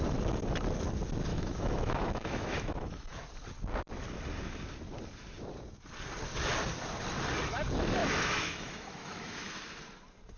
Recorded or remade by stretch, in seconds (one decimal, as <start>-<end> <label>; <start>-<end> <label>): 0.0-1.3 recorded; 1.3-3.1 remade; 3.1-8.0 recorded; 8.0-9.6 remade; 9.6-10.4 recorded